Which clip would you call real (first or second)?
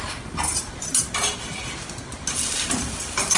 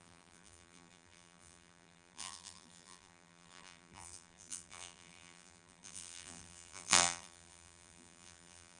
first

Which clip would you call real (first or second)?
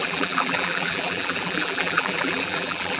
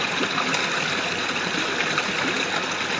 second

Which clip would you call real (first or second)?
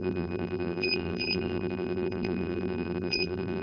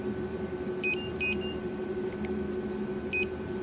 second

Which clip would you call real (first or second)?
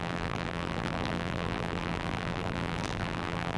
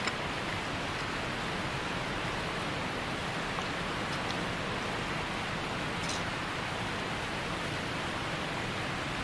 second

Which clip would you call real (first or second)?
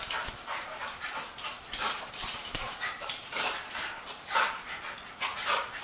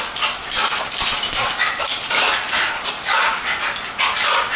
second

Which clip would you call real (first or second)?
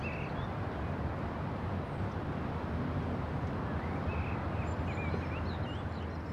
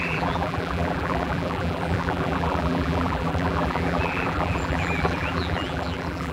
first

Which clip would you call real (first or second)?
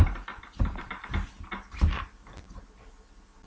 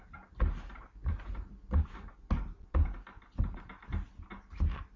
second